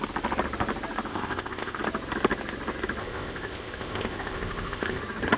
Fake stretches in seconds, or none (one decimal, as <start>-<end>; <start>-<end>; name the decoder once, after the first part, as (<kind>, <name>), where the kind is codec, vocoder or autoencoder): 1.1-1.8 (codec, ZipCodec); 3.0-5.0